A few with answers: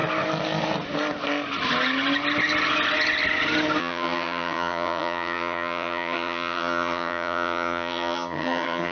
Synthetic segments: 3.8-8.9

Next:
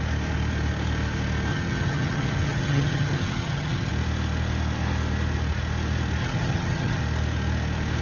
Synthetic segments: 1.5-3.9; 6.2-7.0

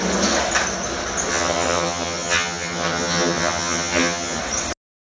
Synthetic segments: 1.3-4.4

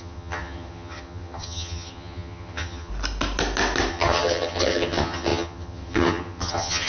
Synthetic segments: 0.0-2.9; 3.9-6.9